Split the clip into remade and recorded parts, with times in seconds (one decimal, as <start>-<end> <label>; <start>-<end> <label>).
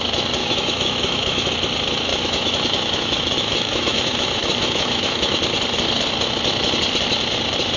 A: 0.0-0.4 recorded; 0.4-1.5 remade; 1.5-2.1 recorded; 2.1-5.4 remade; 5.4-7.8 recorded